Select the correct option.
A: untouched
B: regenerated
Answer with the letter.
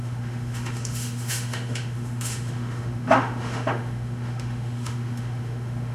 B